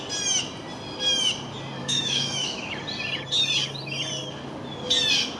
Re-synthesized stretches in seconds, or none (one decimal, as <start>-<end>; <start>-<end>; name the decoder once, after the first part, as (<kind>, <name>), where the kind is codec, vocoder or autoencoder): 1.8-2.8 (autoencoder, DAC-VAE)